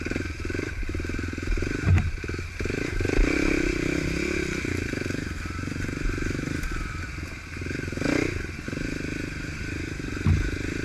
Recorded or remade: recorded